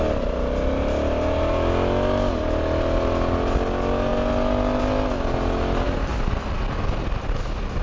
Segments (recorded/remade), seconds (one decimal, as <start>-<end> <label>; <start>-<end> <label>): 0.0-7.8 recorded